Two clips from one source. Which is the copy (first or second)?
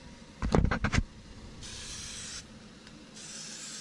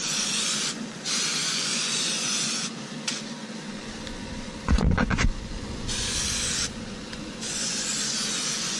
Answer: second